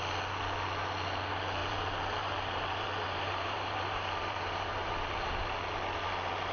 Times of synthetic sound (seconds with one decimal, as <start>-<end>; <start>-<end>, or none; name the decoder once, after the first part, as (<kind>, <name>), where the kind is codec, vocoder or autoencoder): 1.6-5.5 (vocoder, BigVGAN v2)